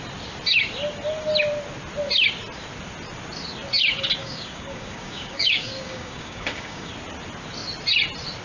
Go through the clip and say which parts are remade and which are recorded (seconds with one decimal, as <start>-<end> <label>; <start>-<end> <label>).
0.0-4.2 recorded; 4.2-6.9 remade; 6.9-8.4 recorded